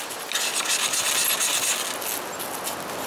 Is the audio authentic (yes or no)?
yes